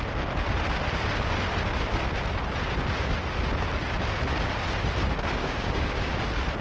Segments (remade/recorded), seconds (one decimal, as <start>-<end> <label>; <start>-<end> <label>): 0.0-5.4 recorded; 5.4-6.1 remade; 6.1-6.6 recorded